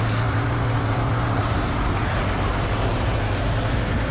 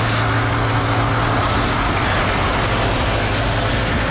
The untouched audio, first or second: second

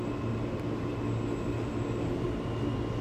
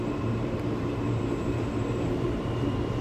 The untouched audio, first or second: first